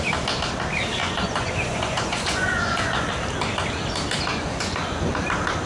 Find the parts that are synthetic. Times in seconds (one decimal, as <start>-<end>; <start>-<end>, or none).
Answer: 1.0-3.1; 4.3-5.1